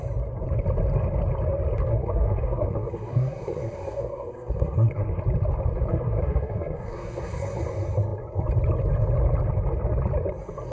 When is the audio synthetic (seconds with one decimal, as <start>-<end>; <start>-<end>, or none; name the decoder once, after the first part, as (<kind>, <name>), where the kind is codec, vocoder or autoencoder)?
1.9-5.2 (codec, SNAC); 5.9-7.6